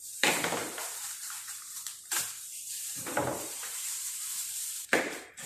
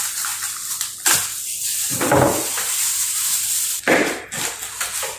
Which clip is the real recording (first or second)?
second